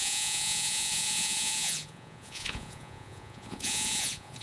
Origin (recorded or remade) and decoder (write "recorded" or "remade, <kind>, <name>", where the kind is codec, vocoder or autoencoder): remade, vocoder, Vocos